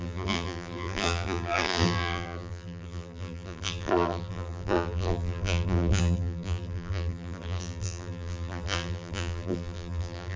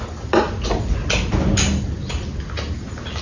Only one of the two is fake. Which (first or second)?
first